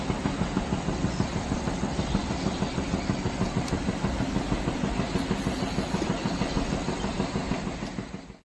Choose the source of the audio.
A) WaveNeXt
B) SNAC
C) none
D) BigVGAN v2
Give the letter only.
C